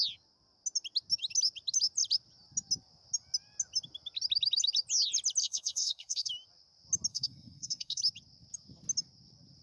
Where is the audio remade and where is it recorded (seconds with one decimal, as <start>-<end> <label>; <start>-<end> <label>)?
0.0-5.4 recorded; 5.4-6.3 remade; 6.3-7.1 recorded; 7.1-8.0 remade; 8.0-9.6 recorded